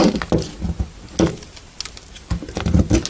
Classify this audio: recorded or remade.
recorded